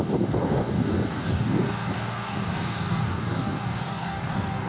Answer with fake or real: fake